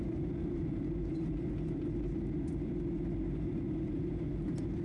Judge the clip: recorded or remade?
recorded